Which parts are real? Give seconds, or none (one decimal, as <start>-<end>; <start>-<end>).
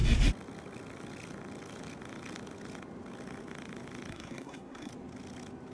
0.0-4.1; 4.9-5.7